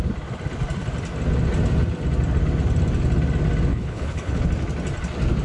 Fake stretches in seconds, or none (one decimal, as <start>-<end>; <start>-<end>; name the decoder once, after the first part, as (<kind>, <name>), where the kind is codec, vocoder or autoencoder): 3.7-4.4 (codec, HILCodec)